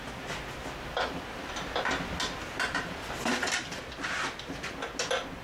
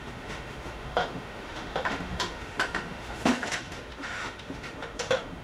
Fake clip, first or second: second